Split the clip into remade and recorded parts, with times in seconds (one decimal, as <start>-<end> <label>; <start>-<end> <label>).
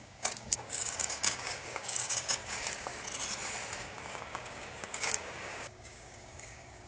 0.0-2.9 remade; 2.9-3.8 recorded; 3.8-6.9 remade